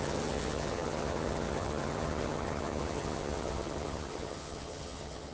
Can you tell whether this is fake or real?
fake